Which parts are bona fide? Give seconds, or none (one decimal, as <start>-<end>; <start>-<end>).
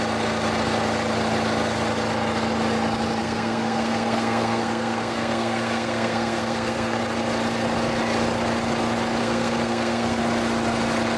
0.0-3.2; 7.0-9.2; 10.2-11.2